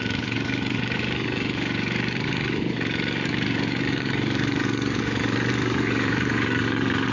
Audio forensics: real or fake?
fake